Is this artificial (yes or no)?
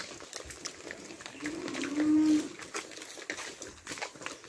no